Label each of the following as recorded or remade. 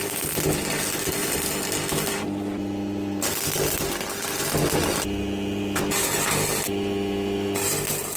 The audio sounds recorded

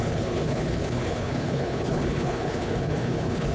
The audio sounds remade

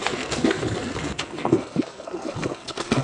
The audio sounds remade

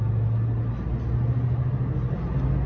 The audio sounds recorded